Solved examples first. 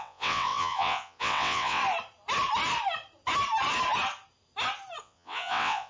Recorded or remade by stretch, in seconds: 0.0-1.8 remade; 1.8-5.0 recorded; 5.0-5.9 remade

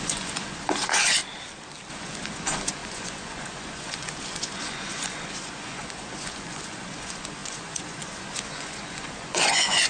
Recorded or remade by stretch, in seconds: 0.0-1.2 remade; 1.2-1.9 recorded; 1.9-9.9 remade

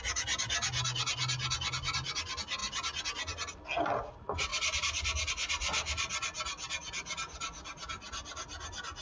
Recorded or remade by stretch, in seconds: 0.0-9.0 recorded

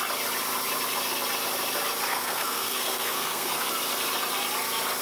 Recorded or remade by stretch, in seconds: 0.0-2.1 recorded; 2.1-3.7 remade; 3.7-5.0 recorded

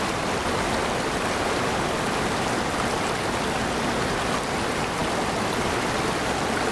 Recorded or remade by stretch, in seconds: 0.0-6.7 recorded

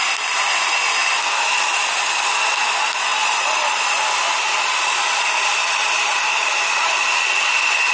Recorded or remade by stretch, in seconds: 0.0-3.1 recorded; 3.1-3.8 remade; 3.8-5.6 recorded; 5.6-7.0 remade; 7.0-7.9 recorded